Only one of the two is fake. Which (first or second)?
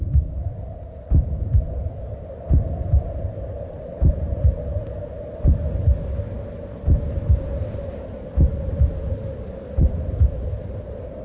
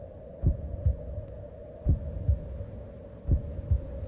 first